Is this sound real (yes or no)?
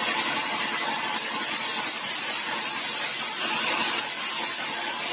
yes